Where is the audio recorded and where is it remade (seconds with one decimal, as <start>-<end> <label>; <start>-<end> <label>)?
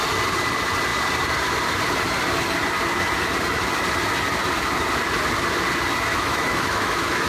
0.0-6.1 recorded; 6.1-7.3 remade